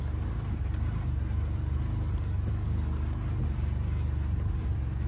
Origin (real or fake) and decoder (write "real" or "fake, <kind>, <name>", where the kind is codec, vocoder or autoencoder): real